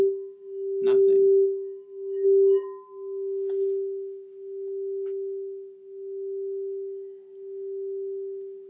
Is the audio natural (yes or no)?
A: yes